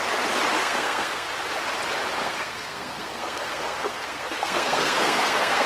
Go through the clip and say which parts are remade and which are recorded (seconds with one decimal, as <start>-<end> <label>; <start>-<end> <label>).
0.0-0.6 recorded; 0.6-1.3 remade; 1.3-2.2 recorded; 2.2-5.7 remade